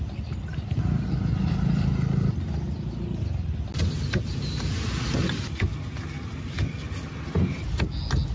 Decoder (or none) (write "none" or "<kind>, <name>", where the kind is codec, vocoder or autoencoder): none